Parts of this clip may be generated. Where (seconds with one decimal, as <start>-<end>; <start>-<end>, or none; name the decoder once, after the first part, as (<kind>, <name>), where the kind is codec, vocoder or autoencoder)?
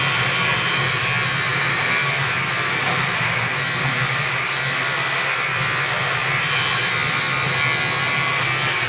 1.5-2.5 (vocoder, BigVGAN v2); 4.0-4.8